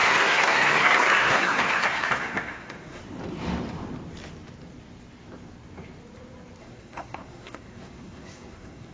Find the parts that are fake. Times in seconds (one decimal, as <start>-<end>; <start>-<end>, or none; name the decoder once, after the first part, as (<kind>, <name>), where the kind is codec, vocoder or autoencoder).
0.0-3.0 (codec, SNAC); 6.6-8.9